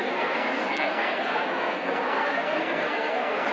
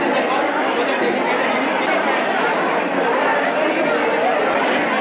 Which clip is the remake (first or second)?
first